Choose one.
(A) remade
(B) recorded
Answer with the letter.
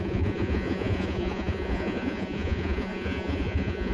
A